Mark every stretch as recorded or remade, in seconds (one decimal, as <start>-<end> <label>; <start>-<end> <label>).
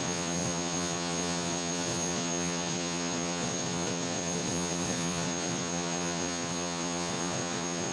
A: 0.0-7.9 remade